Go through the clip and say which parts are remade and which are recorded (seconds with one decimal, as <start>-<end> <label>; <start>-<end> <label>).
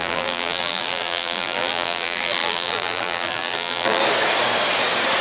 0.0-4.0 remade; 4.0-5.2 recorded